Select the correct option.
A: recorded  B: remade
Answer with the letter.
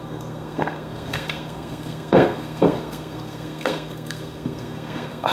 B